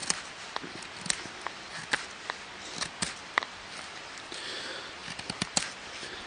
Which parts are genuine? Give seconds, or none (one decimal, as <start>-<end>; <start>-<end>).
0.0-6.3